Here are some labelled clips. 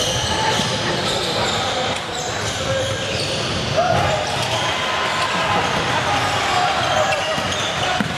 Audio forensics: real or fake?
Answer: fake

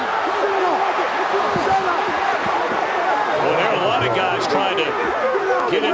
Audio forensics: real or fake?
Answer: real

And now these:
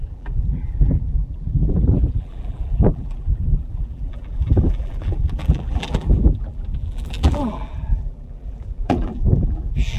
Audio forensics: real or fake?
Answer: fake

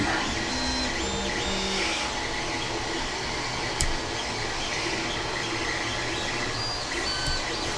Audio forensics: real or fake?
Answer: real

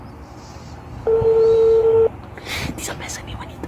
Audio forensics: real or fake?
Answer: real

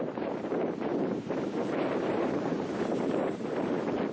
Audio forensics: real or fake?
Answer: fake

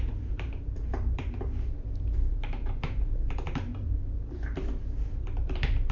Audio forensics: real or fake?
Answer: fake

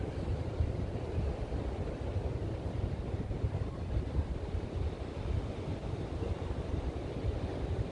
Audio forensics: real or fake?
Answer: fake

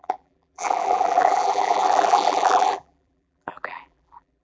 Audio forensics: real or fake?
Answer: fake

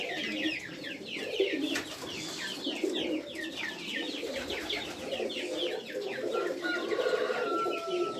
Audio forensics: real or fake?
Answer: real